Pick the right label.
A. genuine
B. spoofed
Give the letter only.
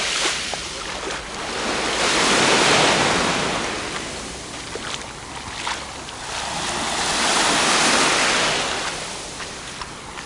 A